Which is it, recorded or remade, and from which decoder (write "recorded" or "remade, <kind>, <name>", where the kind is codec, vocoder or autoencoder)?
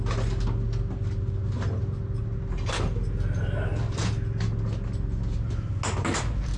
recorded